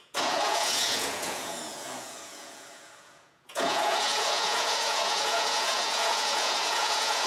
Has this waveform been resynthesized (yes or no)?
yes